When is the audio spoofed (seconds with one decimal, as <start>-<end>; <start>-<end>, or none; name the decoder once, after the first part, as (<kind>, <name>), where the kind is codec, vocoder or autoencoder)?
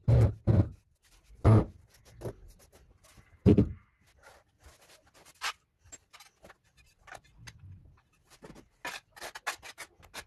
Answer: none